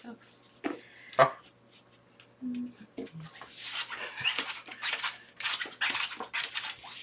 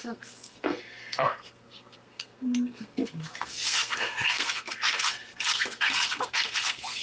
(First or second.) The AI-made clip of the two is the second